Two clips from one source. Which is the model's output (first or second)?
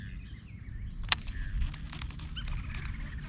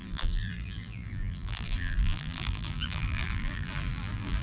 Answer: second